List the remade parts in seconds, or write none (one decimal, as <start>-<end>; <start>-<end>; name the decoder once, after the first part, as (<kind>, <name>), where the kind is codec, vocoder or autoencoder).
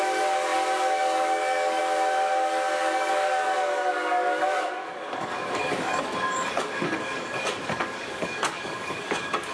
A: 0.0-9.5 (codec, DAC)